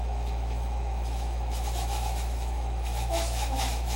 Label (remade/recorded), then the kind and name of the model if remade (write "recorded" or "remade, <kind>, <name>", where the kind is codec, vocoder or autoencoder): remade, autoencoder, DAC-VAE